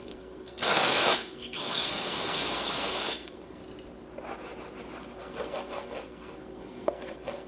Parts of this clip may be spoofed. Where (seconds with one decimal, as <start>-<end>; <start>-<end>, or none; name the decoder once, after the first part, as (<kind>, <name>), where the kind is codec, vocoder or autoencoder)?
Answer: 0.0-3.6 (codec, SNAC); 5.2-7.5